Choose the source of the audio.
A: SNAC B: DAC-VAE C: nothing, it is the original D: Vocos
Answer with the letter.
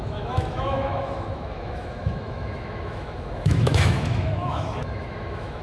B